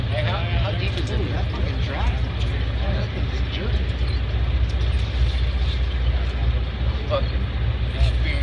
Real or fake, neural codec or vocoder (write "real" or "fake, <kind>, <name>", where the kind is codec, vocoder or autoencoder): real